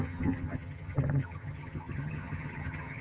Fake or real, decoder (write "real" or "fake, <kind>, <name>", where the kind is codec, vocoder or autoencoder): fake, vocoder, HiFi-GAN